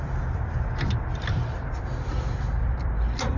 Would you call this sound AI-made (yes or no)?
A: yes